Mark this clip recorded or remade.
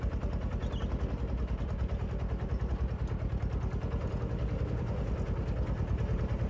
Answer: recorded